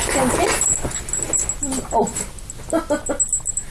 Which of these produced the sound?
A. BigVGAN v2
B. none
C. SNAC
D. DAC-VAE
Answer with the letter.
B